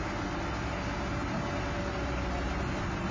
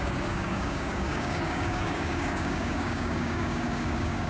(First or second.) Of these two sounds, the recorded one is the first